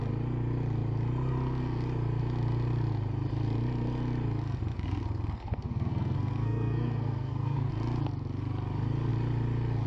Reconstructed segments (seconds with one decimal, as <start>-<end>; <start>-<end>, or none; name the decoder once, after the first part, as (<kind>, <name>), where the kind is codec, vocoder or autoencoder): 4.7-7.7 (codec, SNAC)